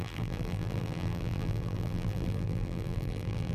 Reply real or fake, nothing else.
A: fake